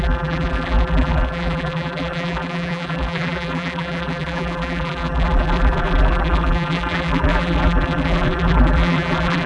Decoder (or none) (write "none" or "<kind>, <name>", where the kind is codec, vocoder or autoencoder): vocoder, BigVGAN v2